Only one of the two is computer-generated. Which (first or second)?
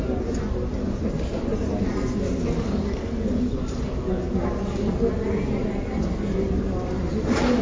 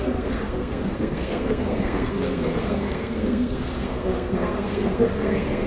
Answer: second